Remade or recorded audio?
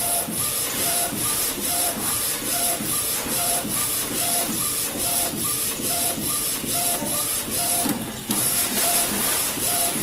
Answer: remade